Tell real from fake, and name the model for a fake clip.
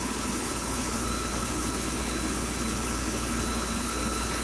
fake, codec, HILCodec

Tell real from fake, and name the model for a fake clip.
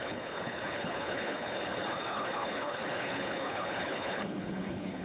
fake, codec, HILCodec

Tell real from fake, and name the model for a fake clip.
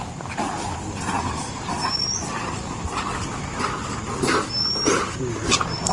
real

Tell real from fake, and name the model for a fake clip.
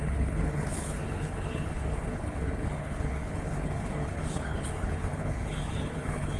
fake, codec, HILCodec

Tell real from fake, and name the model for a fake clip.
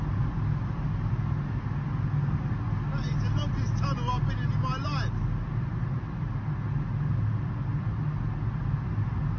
real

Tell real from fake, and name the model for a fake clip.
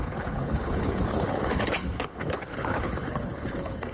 fake, codec, HILCodec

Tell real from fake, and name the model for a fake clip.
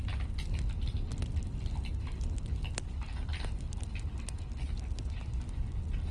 real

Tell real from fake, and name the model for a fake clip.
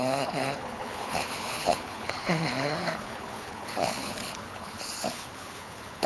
fake, codec, HILCodec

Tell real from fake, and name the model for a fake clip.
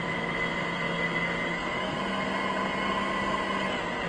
real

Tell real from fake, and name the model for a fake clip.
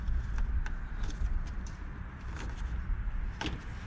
real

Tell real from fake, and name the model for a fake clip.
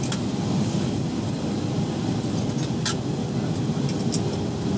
real